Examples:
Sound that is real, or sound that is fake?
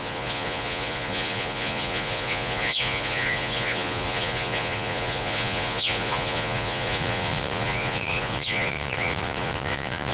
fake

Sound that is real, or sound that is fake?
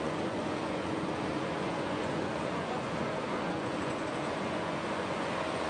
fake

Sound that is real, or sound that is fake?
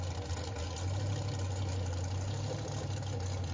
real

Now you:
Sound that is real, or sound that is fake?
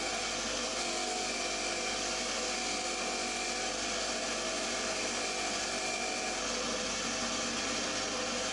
real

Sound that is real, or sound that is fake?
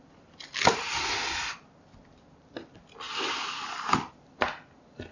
real